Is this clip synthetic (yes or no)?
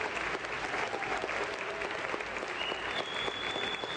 no